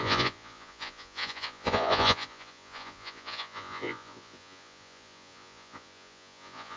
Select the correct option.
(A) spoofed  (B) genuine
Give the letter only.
A